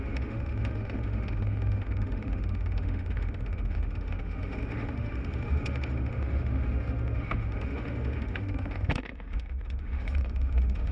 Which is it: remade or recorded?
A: remade